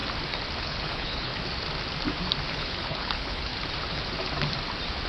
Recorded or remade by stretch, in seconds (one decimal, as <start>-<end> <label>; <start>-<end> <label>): 0.0-0.6 recorded; 0.6-1.3 remade; 1.3-2.5 recorded; 2.5-3.5 remade; 3.5-5.1 recorded